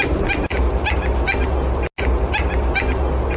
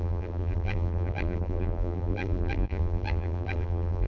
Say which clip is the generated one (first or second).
second